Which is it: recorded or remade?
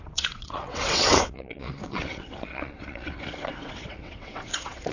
remade